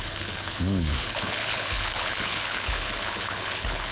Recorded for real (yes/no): no